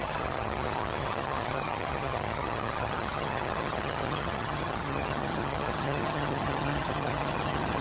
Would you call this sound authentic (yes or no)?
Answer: no